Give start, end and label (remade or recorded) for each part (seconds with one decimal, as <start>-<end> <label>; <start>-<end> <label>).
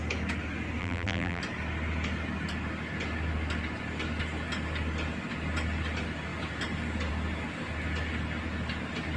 0.0-0.8 recorded; 0.8-1.4 remade; 1.4-9.2 recorded